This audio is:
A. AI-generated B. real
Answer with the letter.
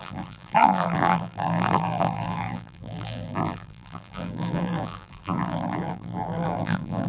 A